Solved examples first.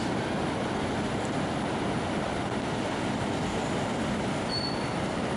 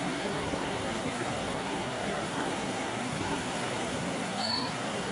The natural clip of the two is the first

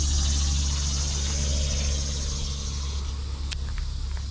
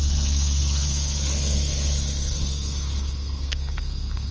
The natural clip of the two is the first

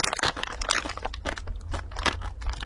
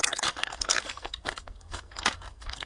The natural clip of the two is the first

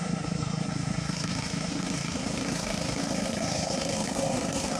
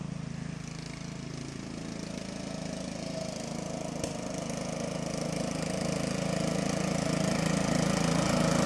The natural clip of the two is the second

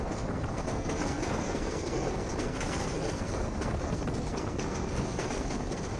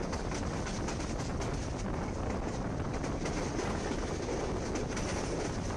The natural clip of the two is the second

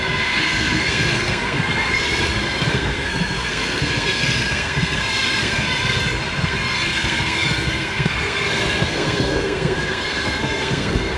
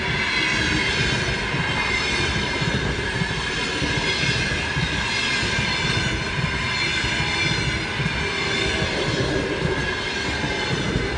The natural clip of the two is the second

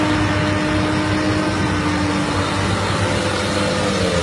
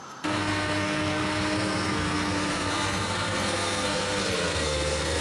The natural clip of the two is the first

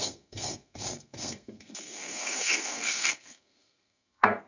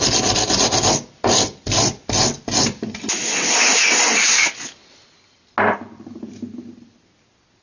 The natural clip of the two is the second